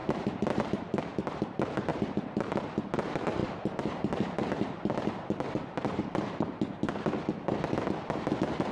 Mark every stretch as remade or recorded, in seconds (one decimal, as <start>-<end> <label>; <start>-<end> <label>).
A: 0.0-1.4 remade; 1.4-1.9 recorded; 1.9-2.5 remade; 2.5-3.4 recorded; 3.4-6.0 remade; 6.0-8.7 recorded